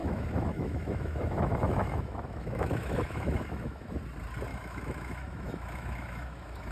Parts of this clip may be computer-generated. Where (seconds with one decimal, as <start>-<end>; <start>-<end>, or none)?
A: 0.0-4.0; 4.5-6.7